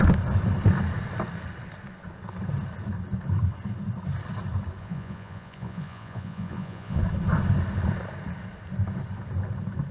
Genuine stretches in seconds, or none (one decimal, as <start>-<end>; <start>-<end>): 0.0-4.8; 7.0-9.9